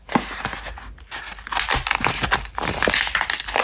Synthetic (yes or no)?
no